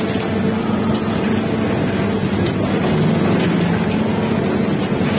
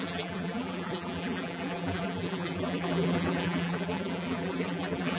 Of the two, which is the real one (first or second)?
first